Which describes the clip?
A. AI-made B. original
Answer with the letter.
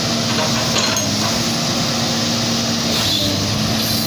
B